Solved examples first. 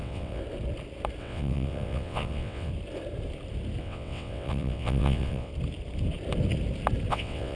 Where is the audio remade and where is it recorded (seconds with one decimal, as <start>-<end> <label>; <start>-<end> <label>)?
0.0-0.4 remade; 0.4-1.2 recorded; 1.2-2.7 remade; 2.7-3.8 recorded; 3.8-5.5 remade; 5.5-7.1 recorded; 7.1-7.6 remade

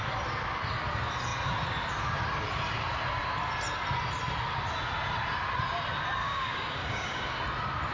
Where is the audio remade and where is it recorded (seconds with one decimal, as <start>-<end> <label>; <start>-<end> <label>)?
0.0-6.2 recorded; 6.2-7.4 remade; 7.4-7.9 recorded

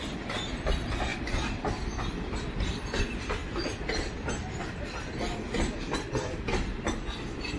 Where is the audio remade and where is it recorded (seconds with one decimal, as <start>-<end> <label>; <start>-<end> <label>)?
0.0-7.6 recorded

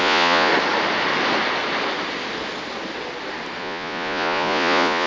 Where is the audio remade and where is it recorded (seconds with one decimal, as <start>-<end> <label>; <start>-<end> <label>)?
0.0-0.5 remade; 0.5-3.6 recorded; 3.6-5.1 remade

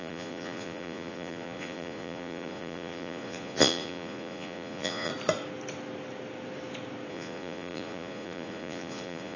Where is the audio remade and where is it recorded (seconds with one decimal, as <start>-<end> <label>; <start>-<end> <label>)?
0.0-5.1 remade; 5.1-7.1 recorded; 7.1-9.4 remade

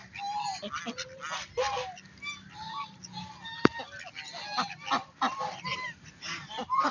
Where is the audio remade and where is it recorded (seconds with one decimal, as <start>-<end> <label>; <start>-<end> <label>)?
0.0-5.7 recorded; 5.7-6.9 remade

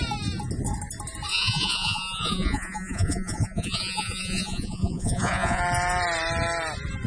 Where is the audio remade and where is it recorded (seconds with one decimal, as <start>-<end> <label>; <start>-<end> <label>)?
0.0-1.3 recorded; 1.3-5.6 remade; 5.6-7.1 recorded

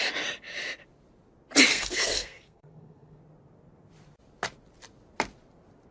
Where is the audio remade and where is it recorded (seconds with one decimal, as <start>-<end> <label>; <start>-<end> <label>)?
0.0-1.7 recorded; 1.7-3.2 remade; 3.2-5.9 recorded